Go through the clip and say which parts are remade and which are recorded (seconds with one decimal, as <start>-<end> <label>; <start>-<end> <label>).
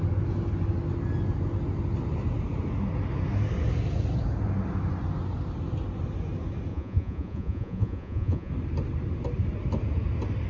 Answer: 0.0-6.7 recorded; 6.7-8.5 remade; 8.5-10.5 recorded